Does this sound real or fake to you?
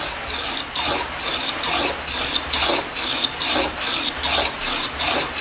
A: real